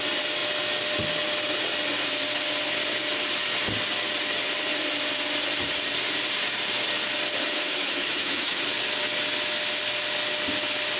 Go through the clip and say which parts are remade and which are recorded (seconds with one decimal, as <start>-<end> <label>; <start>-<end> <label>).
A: 0.0-7.5 recorded; 7.5-8.6 remade; 8.6-11.0 recorded